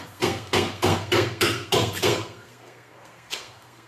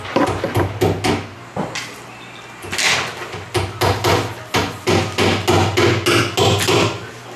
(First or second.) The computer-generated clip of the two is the first